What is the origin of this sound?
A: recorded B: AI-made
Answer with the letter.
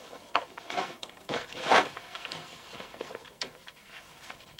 B